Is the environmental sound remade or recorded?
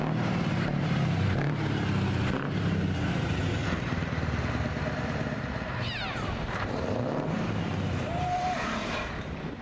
remade